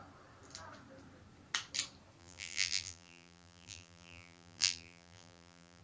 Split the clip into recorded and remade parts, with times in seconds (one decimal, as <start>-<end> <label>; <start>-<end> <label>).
0.0-2.2 recorded; 2.2-5.8 remade